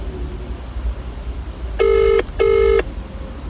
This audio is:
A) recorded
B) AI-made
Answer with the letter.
A